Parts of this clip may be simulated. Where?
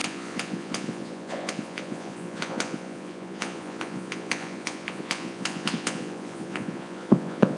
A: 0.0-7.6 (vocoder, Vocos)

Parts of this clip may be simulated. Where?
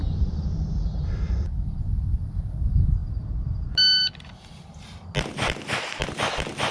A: 0.0-3.0 (vocoder, BigVGAN v2); 6.1-6.7